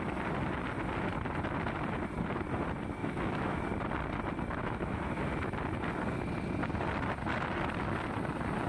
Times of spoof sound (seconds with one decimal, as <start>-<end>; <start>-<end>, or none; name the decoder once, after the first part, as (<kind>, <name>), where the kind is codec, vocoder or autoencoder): 3.0-3.6 (autoencoder, DAC-VAE); 4.6-5.3